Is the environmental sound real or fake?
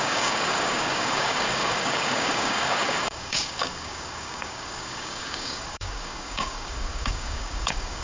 fake